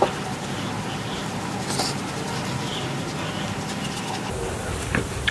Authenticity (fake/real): fake